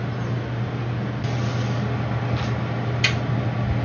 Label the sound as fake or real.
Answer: real